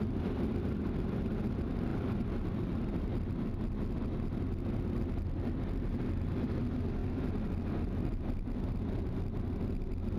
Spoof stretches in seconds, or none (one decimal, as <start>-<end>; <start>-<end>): none